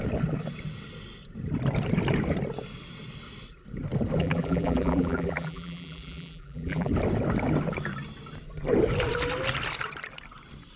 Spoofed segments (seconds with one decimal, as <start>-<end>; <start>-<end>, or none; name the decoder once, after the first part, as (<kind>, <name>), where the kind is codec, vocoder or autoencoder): 4.2-6.9 (vocoder, BigVGAN v2)